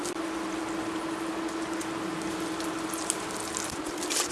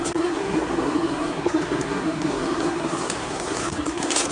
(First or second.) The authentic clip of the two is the first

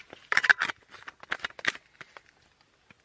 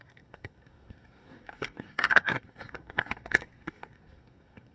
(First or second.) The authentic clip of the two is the first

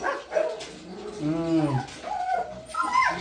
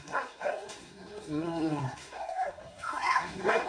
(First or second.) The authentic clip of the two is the first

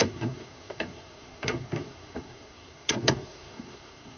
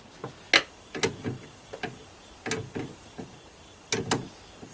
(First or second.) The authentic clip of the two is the second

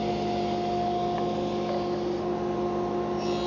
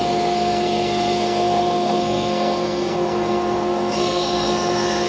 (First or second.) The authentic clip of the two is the first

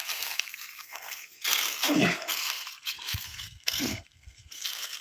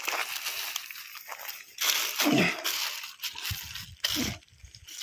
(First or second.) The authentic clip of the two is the second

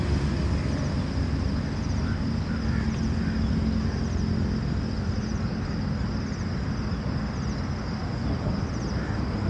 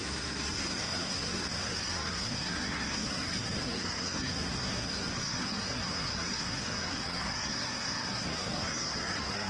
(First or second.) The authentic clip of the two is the first